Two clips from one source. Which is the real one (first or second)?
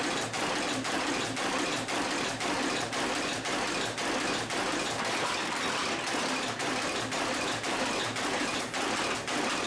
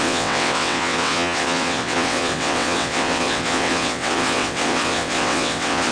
first